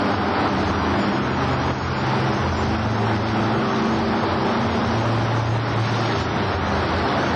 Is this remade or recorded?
recorded